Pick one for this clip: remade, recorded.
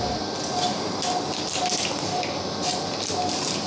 recorded